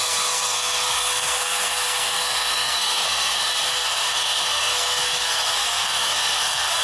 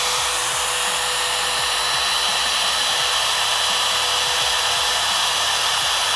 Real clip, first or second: second